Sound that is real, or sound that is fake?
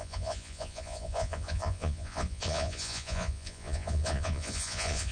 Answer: fake